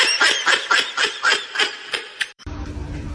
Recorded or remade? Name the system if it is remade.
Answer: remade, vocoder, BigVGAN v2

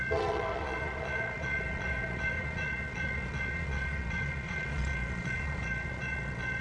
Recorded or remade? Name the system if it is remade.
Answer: remade, vocoder, Vocos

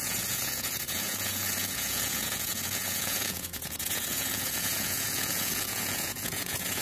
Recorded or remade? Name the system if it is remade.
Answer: remade, vocoder, Vocos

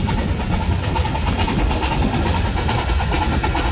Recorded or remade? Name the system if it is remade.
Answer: recorded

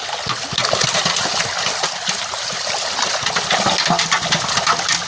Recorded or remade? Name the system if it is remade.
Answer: recorded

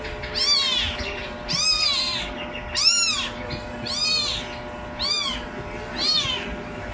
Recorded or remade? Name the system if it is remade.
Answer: recorded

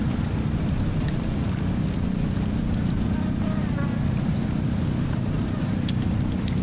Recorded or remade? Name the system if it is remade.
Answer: remade, vocoder, BigVGAN v2